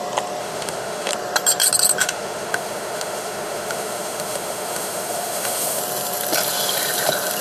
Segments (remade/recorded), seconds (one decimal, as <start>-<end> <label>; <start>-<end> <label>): 0.0-0.4 recorded; 0.4-1.1 remade; 1.1-2.0 recorded; 2.0-5.8 remade; 5.8-7.4 recorded